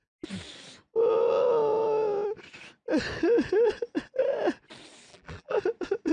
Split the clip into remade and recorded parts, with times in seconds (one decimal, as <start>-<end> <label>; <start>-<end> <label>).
0.0-5.1 recorded; 5.1-5.6 remade; 5.6-6.1 recorded